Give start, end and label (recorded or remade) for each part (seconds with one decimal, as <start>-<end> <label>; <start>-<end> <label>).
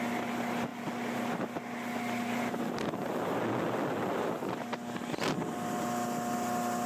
0.0-6.9 recorded